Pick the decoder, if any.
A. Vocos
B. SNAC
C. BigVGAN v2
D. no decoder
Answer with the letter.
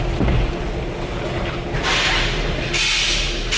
D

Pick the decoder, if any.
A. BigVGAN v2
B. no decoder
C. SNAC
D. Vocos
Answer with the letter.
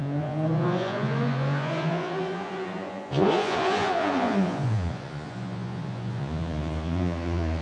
D